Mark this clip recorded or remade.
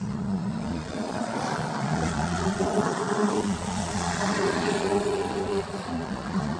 remade